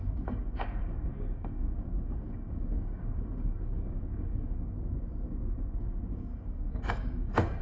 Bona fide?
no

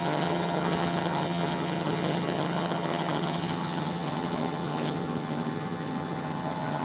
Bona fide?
no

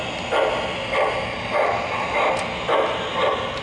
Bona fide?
yes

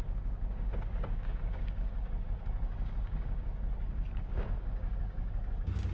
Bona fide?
no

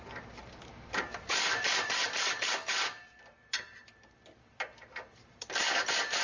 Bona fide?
no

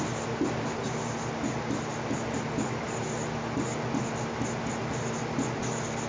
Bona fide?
yes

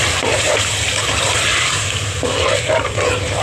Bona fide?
no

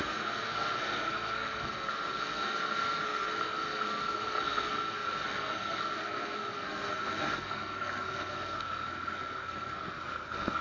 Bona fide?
no